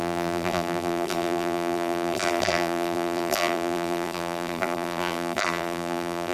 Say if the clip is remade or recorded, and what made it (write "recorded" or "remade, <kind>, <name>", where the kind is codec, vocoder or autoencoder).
remade, vocoder, BigVGAN v2